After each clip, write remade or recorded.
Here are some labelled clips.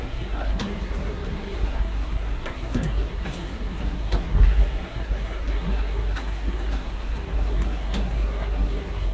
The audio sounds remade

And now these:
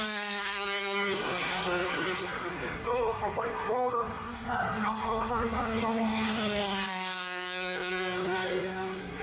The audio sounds remade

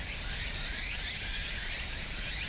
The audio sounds remade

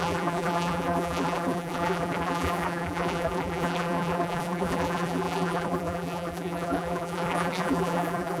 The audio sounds remade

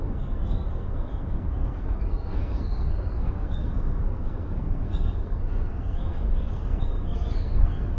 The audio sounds remade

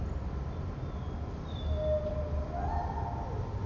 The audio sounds recorded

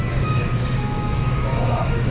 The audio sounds remade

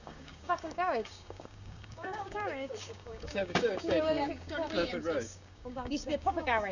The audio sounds remade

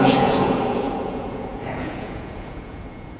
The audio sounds remade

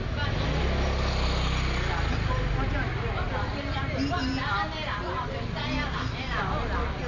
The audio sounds recorded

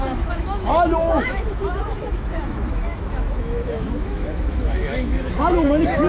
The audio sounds remade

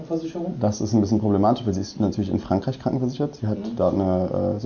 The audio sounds recorded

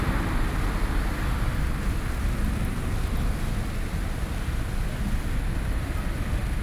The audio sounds recorded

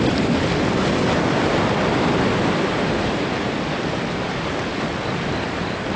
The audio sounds recorded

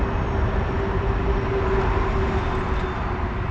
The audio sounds recorded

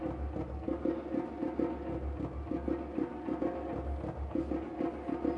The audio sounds recorded